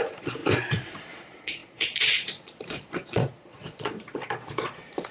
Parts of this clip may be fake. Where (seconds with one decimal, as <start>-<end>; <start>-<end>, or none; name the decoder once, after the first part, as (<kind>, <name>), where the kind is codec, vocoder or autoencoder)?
0.0-0.4 (vocoder, Vocos); 1.0-5.1